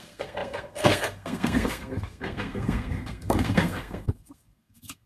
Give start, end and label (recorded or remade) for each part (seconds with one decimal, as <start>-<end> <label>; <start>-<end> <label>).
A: 0.0-5.1 remade